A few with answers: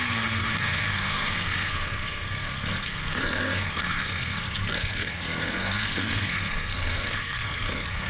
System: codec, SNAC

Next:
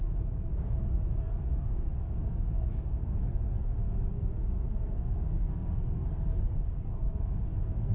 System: codec, SNAC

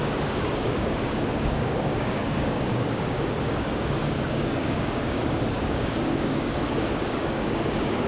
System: codec, DAC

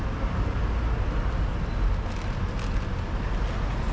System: none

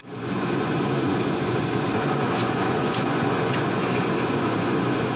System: vocoder, Vocos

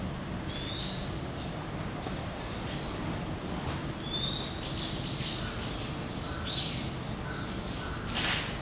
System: none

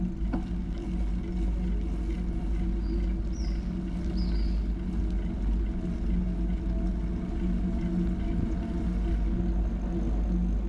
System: none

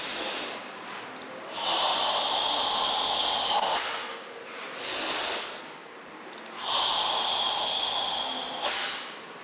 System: none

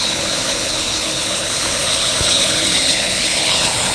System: codec, HILCodec